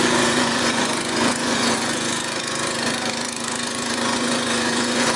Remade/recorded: remade